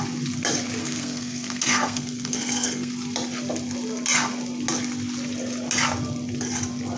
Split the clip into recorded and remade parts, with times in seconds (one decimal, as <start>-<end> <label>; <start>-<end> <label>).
0.0-0.8 recorded; 0.8-2.9 remade; 2.9-7.0 recorded